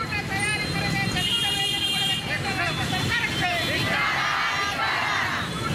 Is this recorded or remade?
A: recorded